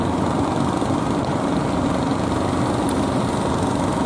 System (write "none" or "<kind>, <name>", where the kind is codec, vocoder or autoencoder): none